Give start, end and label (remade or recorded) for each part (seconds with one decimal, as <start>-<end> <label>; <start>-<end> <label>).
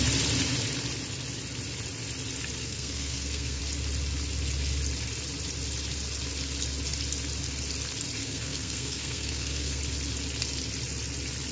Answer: 0.0-2.6 recorded; 2.6-3.6 remade; 3.6-8.2 recorded; 8.2-9.8 remade; 9.8-11.5 recorded